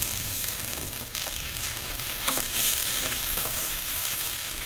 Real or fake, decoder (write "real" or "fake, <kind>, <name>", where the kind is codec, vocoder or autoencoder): fake, codec, DAC